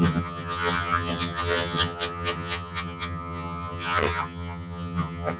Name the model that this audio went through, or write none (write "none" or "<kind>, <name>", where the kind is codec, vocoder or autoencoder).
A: vocoder, HiFi-GAN